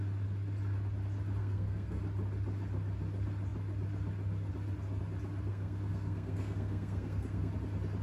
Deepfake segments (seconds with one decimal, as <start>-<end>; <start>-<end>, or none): 1.4-2.0; 5.5-7.5